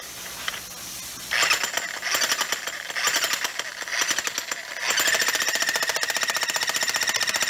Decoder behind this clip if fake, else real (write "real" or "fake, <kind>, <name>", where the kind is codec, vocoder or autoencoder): real